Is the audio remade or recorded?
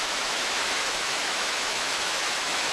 remade